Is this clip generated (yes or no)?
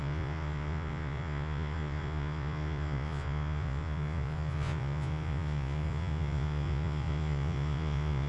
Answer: yes